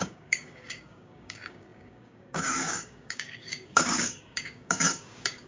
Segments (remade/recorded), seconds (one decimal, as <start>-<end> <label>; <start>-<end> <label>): 0.0-5.5 remade